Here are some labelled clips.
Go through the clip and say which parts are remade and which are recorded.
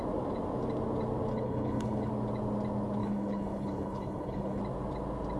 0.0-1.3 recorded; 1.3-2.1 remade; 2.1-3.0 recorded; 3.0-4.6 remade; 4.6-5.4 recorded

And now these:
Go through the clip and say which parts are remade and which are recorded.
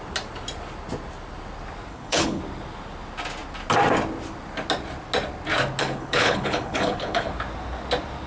0.0-1.9 recorded; 1.9-2.4 remade; 2.4-5.8 recorded; 5.8-7.3 remade; 7.3-8.3 recorded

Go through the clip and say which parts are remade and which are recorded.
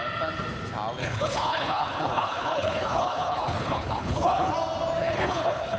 0.0-1.0 recorded; 1.0-4.5 remade; 4.5-5.0 recorded; 5.0-5.8 remade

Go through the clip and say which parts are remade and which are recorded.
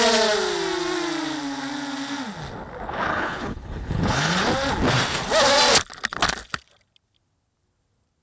0.0-3.1 recorded; 3.1-4.4 remade; 4.4-8.2 recorded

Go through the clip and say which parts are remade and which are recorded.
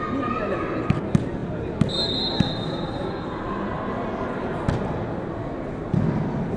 0.0-6.6 recorded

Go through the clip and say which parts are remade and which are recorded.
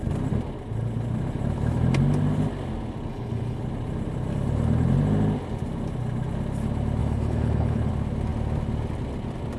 0.0-3.1 recorded; 3.1-3.6 remade; 3.6-7.0 recorded; 7.0-7.9 remade; 7.9-9.6 recorded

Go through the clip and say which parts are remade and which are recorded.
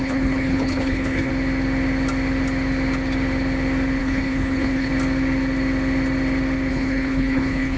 0.0-1.3 remade; 1.3-4.0 recorded; 4.0-4.9 remade; 4.9-6.7 recorded; 6.7-7.8 remade